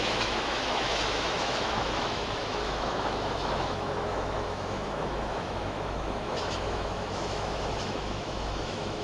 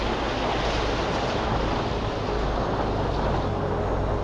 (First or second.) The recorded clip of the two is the second